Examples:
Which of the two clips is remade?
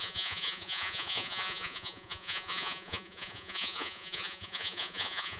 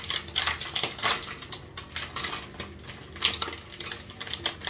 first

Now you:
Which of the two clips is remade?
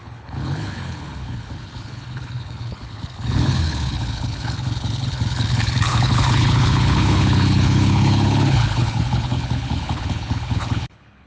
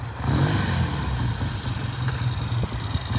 first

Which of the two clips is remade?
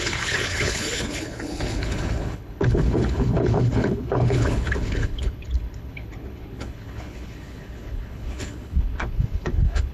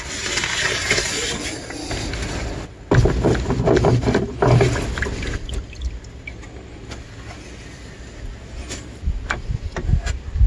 first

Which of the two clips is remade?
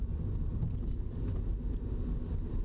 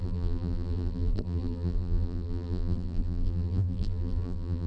second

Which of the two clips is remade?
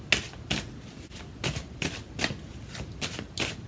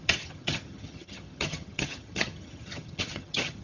second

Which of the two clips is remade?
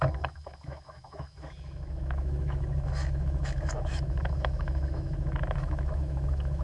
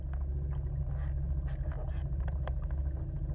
first